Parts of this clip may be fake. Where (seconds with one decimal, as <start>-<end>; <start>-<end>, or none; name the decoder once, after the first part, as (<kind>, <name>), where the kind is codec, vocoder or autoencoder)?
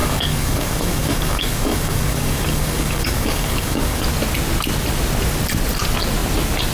0.0-4.0 (codec, DAC)